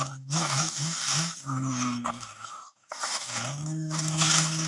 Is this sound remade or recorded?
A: remade